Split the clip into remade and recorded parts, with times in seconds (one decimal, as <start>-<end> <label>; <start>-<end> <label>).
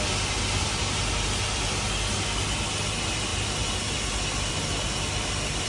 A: 0.0-5.7 recorded